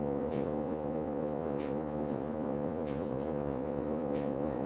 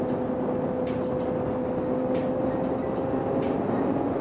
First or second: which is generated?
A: first